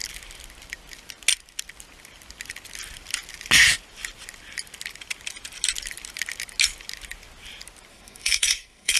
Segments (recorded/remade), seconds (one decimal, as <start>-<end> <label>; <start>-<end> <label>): 0.0-7.9 recorded; 7.9-9.0 remade